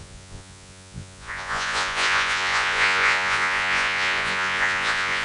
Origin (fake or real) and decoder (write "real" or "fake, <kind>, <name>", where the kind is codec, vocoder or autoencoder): fake, vocoder, Vocos